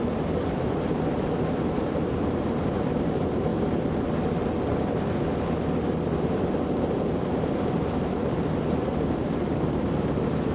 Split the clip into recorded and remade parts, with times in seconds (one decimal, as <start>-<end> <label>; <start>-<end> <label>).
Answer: 0.0-3.5 remade; 3.5-6.2 recorded; 6.2-10.5 remade